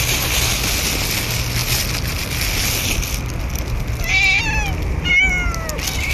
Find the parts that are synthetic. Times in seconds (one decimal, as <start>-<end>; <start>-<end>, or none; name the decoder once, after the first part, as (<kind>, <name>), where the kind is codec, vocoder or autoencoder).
none